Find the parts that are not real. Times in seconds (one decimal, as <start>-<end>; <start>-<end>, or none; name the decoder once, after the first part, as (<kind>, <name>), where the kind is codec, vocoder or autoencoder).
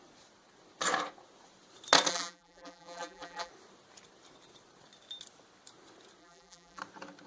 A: 2.1-3.5 (vocoder, BigVGAN v2); 6.2-6.8